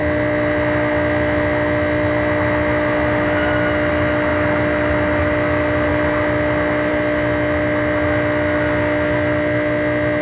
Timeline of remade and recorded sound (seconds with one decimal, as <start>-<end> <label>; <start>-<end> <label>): 0.0-10.2 recorded